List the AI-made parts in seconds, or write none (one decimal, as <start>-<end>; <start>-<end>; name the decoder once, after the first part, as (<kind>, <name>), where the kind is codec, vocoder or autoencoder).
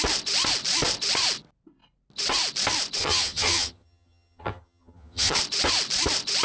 3.0-5.4 (vocoder, HiFi-GAN)